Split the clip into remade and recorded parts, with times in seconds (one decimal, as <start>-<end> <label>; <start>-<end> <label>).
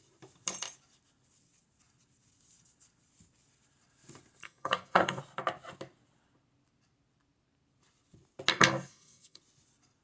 0.0-4.4 recorded; 4.4-5.2 remade; 5.2-8.5 recorded; 8.5-9.4 remade; 9.4-10.0 recorded